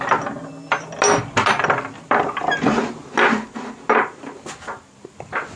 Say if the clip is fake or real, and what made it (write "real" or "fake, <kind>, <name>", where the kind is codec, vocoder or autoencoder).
real